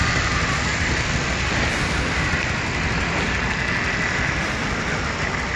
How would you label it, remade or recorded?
recorded